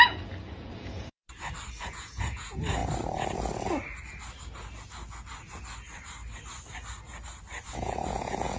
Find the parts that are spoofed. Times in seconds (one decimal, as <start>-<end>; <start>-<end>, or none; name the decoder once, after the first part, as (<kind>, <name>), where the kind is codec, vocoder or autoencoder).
0.0-1.2 (vocoder, Vocos); 1.8-2.8; 7.7-8.6